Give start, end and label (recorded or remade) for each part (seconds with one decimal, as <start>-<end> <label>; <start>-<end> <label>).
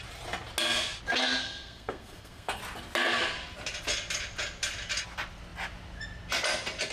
0.0-1.4 recorded; 1.4-2.6 remade; 2.6-6.9 recorded